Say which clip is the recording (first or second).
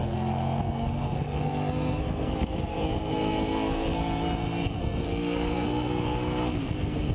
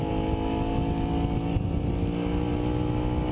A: second